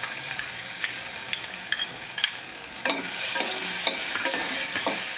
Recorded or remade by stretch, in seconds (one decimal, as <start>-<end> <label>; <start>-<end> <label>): 0.0-3.3 remade; 3.3-4.2 recorded; 4.2-5.2 remade